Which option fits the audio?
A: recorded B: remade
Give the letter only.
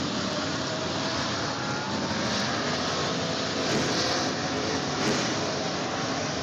A